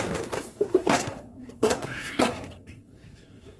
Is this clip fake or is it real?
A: fake